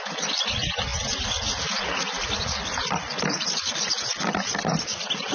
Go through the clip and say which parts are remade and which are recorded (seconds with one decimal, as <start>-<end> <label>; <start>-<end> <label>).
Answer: 0.0-5.3 recorded